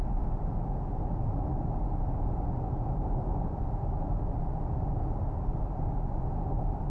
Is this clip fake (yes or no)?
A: no